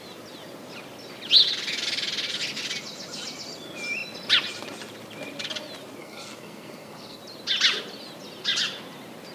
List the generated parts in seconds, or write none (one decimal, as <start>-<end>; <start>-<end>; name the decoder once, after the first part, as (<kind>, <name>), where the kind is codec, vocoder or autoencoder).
6.0-7.2 (codec, SNAC)